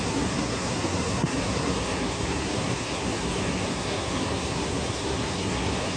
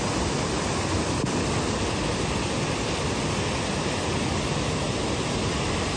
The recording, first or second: second